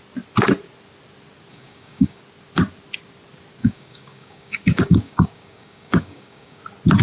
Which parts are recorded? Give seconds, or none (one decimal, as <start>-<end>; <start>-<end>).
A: 0.0-1.5; 2.2-3.6; 6.6-7.0